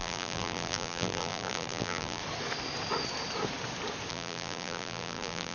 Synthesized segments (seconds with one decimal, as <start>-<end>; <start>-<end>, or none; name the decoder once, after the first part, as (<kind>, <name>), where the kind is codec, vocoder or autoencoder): 0.0-2.2 (vocoder, BigVGAN v2); 4.1-5.5